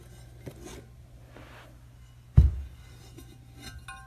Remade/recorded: recorded